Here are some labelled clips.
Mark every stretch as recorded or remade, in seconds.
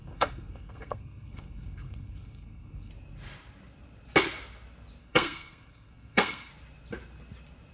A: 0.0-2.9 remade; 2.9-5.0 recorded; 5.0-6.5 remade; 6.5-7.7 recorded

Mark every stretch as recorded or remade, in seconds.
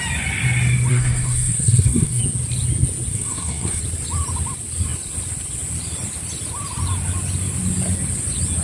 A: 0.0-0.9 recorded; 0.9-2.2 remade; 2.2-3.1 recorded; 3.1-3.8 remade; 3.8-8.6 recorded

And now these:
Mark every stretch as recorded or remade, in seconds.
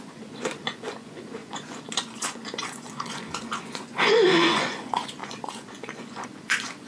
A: 0.0-6.9 remade